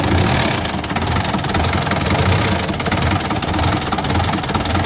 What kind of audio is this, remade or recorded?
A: recorded